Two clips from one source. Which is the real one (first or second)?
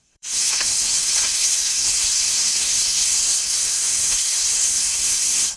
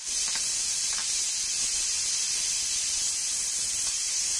second